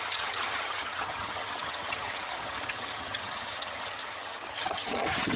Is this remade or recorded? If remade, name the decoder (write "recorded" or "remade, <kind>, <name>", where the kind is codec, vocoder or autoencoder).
remade, vocoder, HiFi-GAN